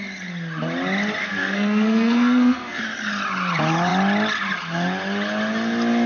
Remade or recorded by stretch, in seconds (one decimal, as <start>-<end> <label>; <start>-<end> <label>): 0.0-1.2 recorded; 1.2-2.8 remade; 2.8-6.1 recorded

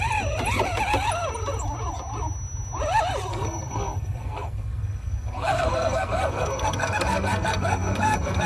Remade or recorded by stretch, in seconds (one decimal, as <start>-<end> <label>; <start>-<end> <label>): 0.0-3.3 recorded; 3.3-8.5 remade

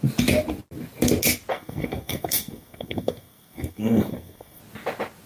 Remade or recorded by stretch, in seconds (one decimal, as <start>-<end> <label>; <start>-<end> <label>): 0.0-1.5 recorded; 1.5-4.6 remade; 4.6-5.3 recorded

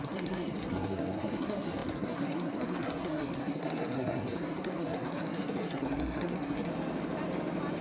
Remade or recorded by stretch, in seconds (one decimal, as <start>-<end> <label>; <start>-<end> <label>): 0.0-6.7 remade; 6.7-7.8 recorded

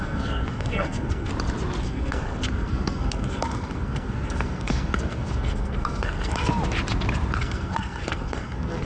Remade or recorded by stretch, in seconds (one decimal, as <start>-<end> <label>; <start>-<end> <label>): 0.0-1.3 remade; 1.3-1.8 recorded; 1.8-6.5 remade; 6.5-7.4 recorded; 7.4-8.8 remade

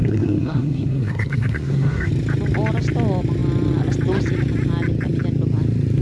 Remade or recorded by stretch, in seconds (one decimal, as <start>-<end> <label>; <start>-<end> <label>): 0.0-2.1 remade; 2.1-6.0 recorded

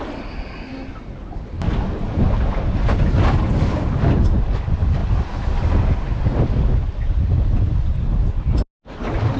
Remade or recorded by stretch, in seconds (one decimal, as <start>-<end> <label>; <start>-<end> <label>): 0.0-9.4 recorded